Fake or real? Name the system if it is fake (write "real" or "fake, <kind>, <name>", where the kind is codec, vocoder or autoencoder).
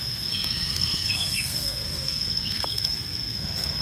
fake, codec, SNAC